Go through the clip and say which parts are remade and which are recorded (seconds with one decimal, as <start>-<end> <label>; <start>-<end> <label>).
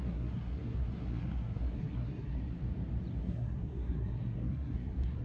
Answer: 0.0-2.6 remade; 2.6-3.2 recorded; 3.2-5.2 remade